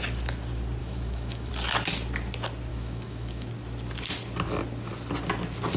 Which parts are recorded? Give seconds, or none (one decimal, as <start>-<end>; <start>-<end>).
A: 0.0-0.8; 1.5-2.7; 3.5-5.8